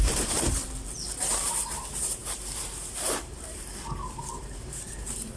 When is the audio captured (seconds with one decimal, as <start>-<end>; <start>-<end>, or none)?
0.6-1.2